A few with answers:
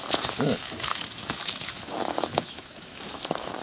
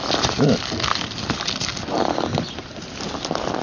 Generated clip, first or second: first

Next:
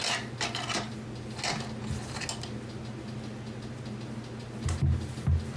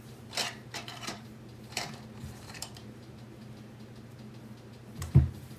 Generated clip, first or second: second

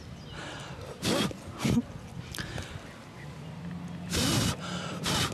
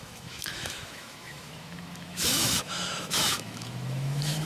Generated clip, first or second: second